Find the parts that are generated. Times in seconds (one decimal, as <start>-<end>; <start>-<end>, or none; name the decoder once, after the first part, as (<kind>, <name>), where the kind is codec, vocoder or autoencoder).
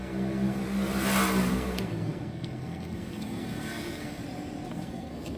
0.0-0.6 (codec, SNAC); 1.5-4.2; 4.7-5.4